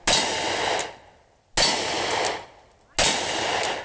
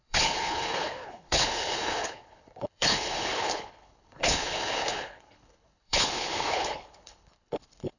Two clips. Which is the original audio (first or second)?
first